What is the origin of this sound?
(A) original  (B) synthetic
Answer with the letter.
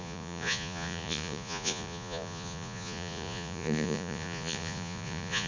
B